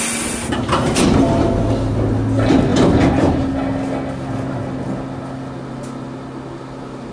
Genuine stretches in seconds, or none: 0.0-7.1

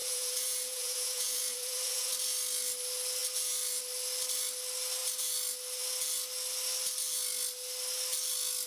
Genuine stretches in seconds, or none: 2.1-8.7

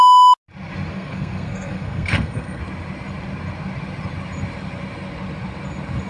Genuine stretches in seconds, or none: 0.0-0.9; 2.6-6.1

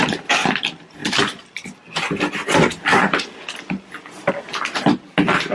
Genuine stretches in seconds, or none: 0.0-5.5

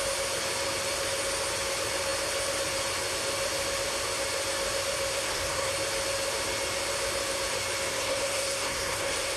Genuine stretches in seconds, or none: 0.0-5.1; 5.7-7.9